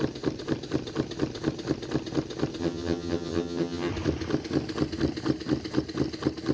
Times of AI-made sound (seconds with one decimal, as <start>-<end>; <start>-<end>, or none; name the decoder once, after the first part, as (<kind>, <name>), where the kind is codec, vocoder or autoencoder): 2.6-3.9 (vocoder, HiFi-GAN)